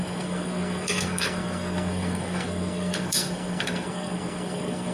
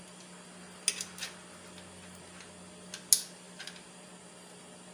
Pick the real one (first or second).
second